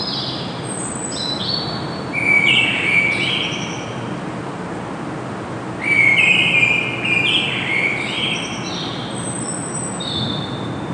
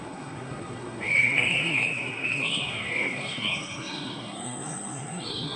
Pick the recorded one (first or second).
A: first